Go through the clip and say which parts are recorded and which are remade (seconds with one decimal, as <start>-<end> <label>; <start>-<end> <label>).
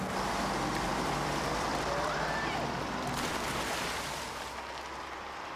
0.0-0.9 recorded; 0.9-4.3 remade; 4.3-5.6 recorded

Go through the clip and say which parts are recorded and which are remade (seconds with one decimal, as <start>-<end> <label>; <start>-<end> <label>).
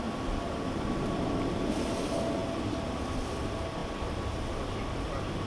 0.0-5.5 recorded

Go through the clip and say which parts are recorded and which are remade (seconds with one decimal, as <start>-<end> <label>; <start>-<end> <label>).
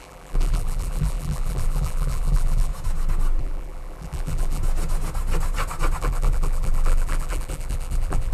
0.0-2.7 remade; 2.7-3.4 recorded; 3.4-4.6 remade; 4.6-6.0 recorded; 6.0-8.3 remade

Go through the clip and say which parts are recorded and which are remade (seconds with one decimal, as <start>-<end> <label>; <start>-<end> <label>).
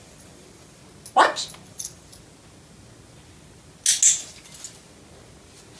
0.0-0.8 remade; 0.8-1.7 recorded; 1.7-2.1 remade; 2.1-5.8 recorded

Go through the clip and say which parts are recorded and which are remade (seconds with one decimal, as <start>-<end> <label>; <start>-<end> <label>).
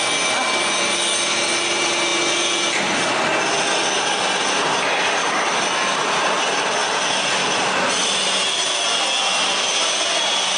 0.0-10.6 recorded